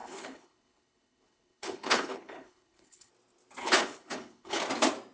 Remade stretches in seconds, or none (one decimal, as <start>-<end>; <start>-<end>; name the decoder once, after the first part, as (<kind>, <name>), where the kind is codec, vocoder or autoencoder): 0.0-3.1 (codec, HILCodec); 3.6-4.6